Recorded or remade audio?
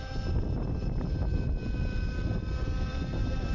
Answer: recorded